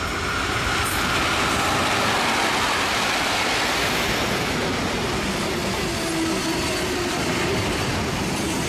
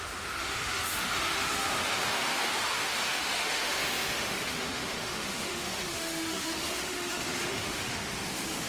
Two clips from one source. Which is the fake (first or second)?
second